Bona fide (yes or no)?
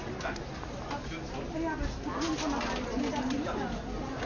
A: yes